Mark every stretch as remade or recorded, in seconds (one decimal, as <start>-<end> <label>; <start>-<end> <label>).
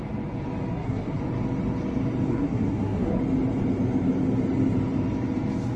0.0-0.7 recorded; 0.7-1.2 remade; 1.2-2.3 recorded; 2.3-3.2 remade; 3.2-5.8 recorded